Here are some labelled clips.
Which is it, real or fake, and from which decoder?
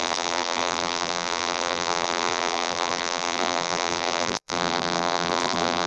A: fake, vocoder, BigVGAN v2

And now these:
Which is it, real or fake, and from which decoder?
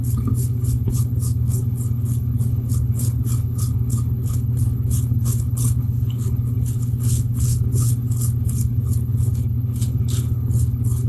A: fake, codec, HILCodec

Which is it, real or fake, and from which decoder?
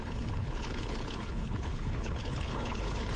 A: fake, codec, HILCodec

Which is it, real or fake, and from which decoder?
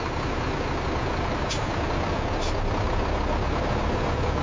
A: real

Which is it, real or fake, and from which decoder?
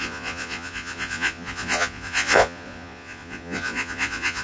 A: fake, vocoder, Vocos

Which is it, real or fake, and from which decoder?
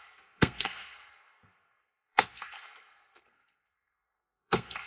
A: fake, codec, SNAC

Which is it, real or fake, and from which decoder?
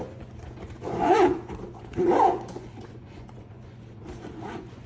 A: fake, vocoder, Vocos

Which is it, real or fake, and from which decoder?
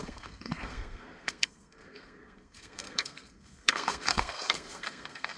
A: fake, codec, SNAC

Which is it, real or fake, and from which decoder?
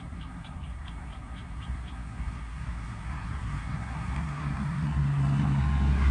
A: fake, codec, SNAC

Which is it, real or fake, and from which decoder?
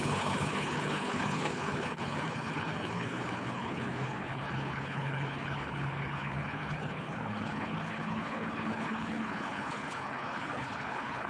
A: fake, codec, HILCodec